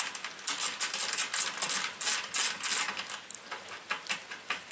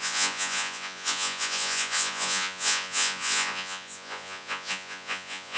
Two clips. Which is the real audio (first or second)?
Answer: first